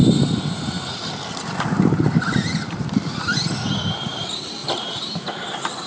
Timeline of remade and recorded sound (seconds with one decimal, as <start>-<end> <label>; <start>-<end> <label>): 0.0-4.6 recorded; 4.6-5.2 remade; 5.2-5.9 recorded